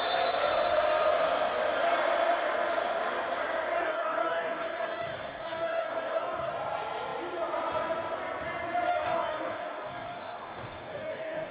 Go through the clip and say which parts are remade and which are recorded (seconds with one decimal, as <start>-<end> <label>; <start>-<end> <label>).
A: 0.0-3.8 recorded; 3.8-6.5 remade; 6.5-8.9 recorded; 8.9-11.5 remade